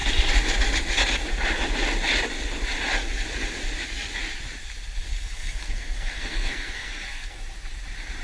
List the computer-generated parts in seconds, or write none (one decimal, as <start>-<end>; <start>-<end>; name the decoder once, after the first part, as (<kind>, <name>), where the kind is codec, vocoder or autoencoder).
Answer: 5.0-7.4 (codec, SNAC)